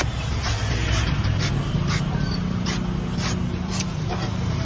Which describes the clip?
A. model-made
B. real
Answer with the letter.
B